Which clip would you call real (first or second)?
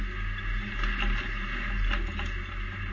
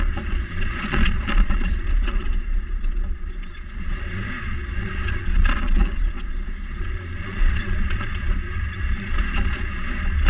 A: first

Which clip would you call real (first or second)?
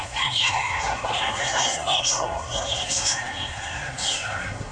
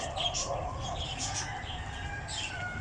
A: second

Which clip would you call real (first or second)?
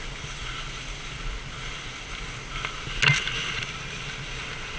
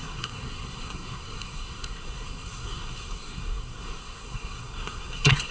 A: first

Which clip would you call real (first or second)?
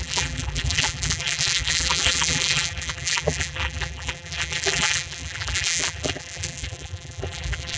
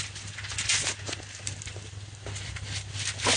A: second